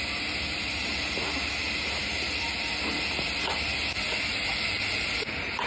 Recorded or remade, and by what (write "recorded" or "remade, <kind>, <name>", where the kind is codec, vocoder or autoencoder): recorded